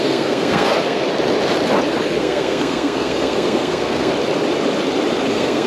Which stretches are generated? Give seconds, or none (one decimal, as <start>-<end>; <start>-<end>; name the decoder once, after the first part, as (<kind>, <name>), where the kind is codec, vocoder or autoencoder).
0.0-1.0 (codec, SNAC); 2.2-4.1; 5.3-5.7